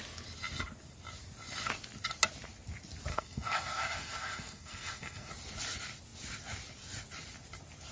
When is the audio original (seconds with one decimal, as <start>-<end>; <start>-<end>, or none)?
0.0-3.1; 5.3-7.9